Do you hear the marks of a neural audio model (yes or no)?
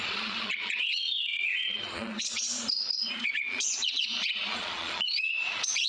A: yes